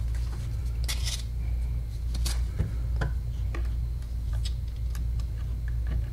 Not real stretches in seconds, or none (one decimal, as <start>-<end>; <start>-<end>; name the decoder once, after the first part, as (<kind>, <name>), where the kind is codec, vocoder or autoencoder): none